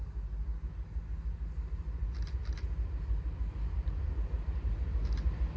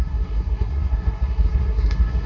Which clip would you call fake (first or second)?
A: second